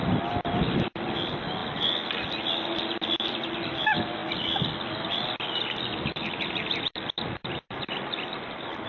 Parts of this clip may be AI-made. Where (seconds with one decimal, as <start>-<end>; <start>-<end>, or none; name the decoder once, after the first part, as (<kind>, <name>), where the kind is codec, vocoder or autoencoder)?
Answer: 0.0-1.6 (vocoder, BigVGAN v2); 2.5-4.2; 4.9-8.9